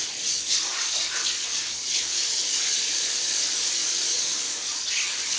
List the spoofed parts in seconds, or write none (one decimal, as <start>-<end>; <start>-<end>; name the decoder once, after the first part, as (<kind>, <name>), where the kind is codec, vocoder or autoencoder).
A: 0.0-5.4 (codec, DAC)